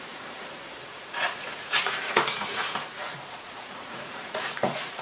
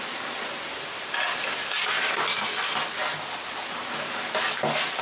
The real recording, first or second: second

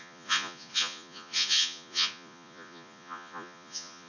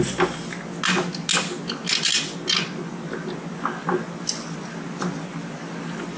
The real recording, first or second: second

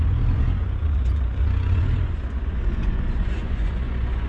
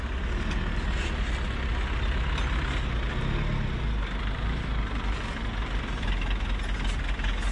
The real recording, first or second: second